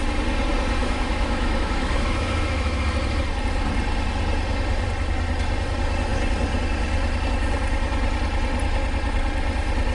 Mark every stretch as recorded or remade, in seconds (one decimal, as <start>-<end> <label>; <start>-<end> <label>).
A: 0.0-0.8 recorded; 0.8-2.8 remade; 2.8-9.9 recorded